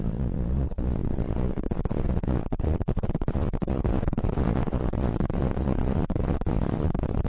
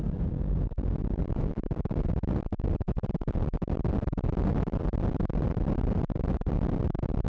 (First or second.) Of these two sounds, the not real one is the first